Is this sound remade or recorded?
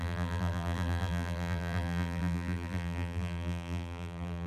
remade